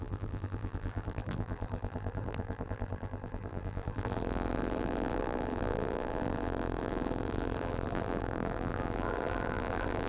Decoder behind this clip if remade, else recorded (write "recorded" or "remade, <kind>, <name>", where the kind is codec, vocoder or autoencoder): remade, vocoder, BigVGAN v2